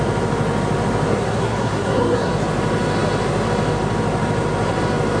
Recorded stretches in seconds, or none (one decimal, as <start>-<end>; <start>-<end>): 0.0-1.1; 2.3-5.2